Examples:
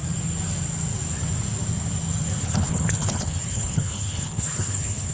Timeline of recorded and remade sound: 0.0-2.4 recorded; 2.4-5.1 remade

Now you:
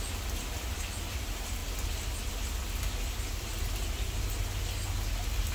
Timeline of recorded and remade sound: 0.0-5.5 recorded

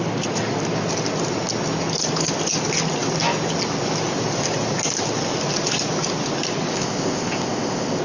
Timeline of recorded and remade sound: 0.0-6.7 recorded; 6.7-8.0 remade

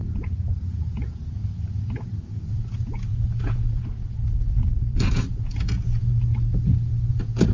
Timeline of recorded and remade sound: 0.0-1.4 remade; 1.4-2.5 recorded; 2.5-6.1 remade; 6.1-7.1 recorded; 7.1-7.5 remade